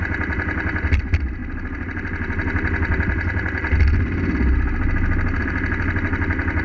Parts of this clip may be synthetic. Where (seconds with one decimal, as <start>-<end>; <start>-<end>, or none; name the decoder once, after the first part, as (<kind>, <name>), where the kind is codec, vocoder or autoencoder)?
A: none